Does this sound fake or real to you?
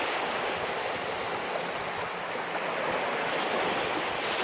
real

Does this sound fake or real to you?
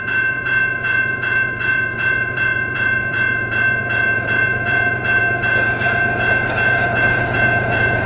fake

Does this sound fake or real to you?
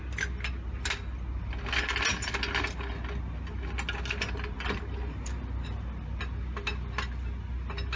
real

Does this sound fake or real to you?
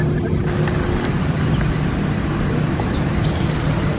real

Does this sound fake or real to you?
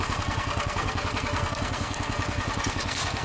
fake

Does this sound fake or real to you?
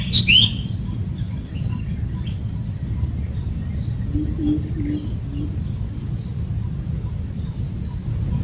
real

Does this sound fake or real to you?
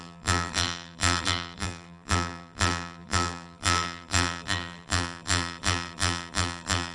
fake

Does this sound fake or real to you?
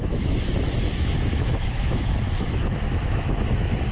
fake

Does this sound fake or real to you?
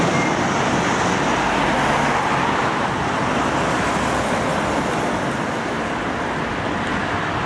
real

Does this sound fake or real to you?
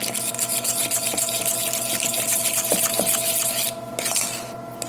real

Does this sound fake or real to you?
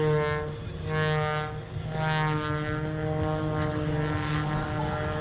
real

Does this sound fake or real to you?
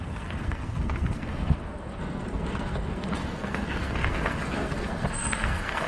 fake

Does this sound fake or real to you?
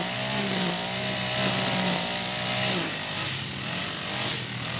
real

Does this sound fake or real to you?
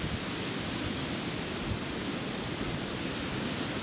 real